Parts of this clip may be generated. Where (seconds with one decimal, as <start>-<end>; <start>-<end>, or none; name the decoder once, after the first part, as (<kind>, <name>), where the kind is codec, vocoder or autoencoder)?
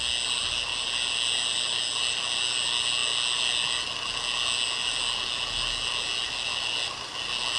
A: none